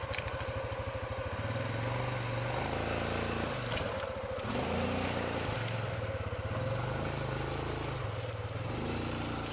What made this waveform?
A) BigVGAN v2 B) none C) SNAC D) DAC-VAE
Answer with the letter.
B